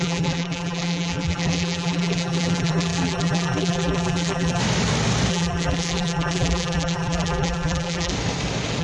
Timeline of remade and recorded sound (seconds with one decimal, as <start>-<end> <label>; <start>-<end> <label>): 0.0-4.6 remade; 4.6-5.3 recorded; 5.3-8.1 remade; 8.1-8.8 recorded